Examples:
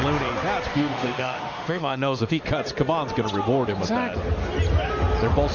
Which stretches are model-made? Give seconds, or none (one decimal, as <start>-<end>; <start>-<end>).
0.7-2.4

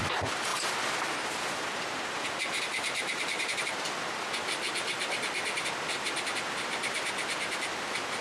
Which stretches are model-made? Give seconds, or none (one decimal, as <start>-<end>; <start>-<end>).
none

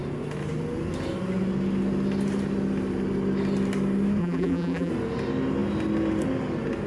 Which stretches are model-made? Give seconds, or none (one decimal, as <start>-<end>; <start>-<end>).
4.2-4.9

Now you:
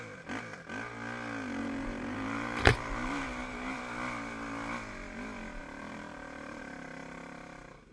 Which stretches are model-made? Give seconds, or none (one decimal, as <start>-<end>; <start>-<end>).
1.6-3.8; 5.6-6.6